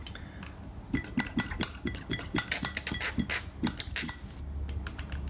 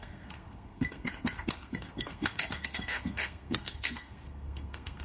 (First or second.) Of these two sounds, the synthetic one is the second